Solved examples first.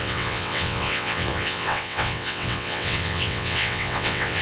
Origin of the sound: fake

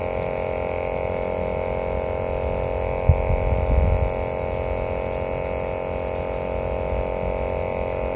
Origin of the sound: real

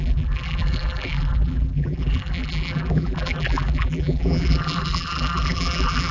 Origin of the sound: fake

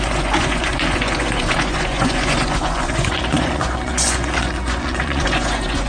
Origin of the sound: fake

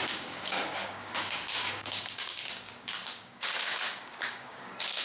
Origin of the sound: fake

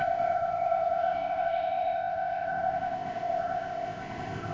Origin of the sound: fake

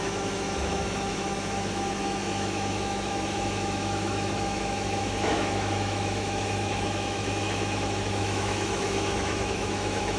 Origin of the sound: fake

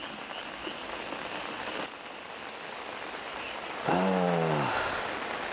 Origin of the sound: real